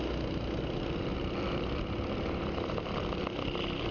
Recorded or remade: recorded